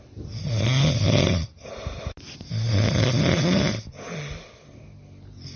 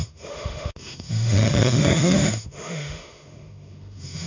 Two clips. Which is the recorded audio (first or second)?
first